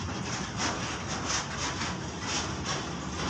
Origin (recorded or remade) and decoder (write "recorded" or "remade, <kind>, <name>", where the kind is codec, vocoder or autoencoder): recorded